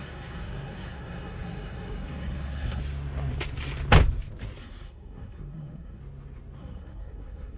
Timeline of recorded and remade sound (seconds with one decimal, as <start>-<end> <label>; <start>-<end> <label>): 0.0-2.8 remade; 2.8-4.6 recorded; 4.6-6.0 remade; 6.0-6.6 recorded; 6.6-7.6 remade